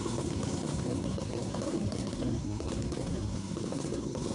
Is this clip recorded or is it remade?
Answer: remade